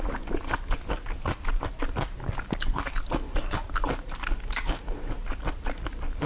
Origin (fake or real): real